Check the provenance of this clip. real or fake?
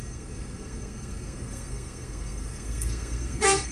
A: fake